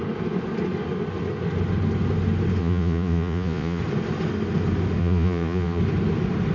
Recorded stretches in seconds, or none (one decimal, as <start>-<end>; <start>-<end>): 0.0-2.6; 3.8-5.0; 5.8-6.5